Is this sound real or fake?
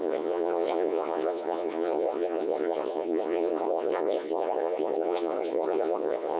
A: fake